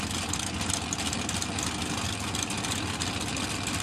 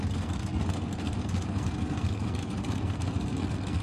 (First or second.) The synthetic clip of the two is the second